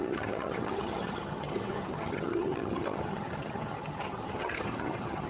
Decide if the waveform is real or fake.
fake